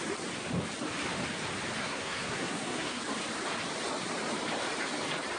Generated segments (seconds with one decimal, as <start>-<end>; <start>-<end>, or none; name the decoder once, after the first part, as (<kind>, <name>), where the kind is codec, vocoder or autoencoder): 1.8-3.0 (codec, SNAC)